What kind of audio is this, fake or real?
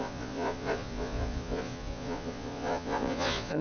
fake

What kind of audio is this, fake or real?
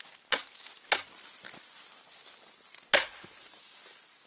real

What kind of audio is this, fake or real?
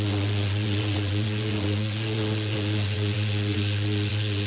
fake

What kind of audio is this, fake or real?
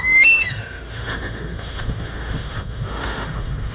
fake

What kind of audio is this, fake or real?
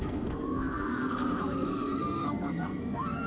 fake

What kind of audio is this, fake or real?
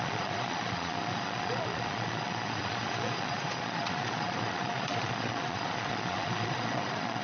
fake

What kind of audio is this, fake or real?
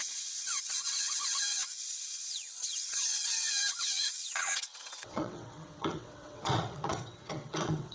fake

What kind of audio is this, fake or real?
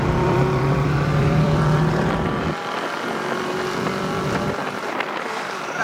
fake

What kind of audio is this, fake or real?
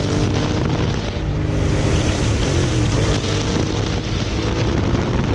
real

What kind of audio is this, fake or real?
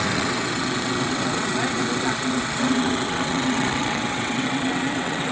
fake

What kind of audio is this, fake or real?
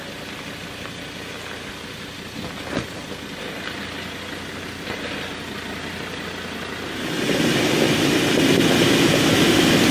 real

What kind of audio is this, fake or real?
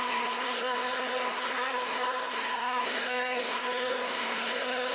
fake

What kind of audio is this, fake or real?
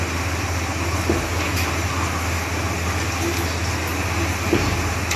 real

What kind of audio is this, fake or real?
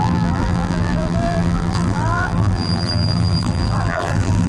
fake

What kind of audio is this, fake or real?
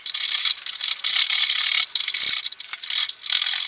real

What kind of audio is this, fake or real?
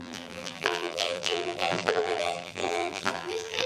fake